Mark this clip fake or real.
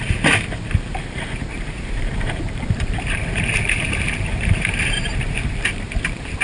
fake